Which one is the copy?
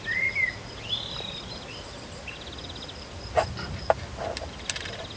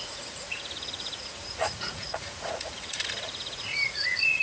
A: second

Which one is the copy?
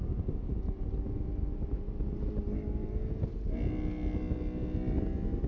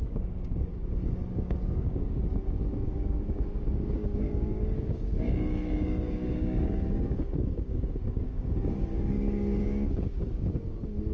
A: second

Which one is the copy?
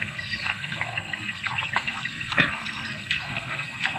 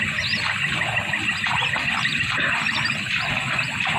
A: first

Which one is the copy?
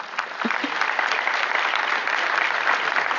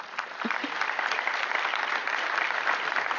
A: second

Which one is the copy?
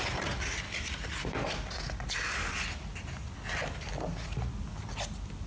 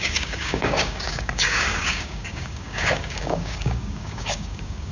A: second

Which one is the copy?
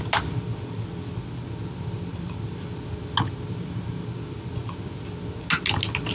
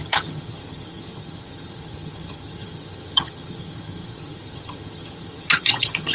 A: second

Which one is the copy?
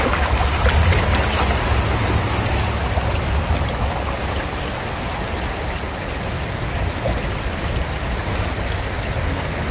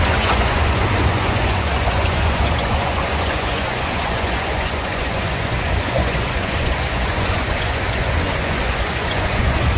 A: second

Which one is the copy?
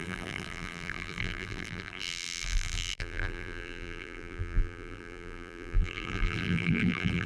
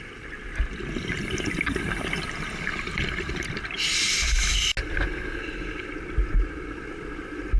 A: first